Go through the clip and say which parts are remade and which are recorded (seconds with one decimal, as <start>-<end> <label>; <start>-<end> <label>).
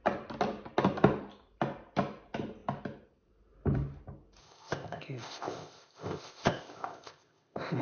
0.0-4.4 recorded; 4.4-7.8 remade